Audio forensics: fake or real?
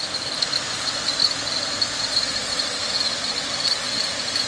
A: real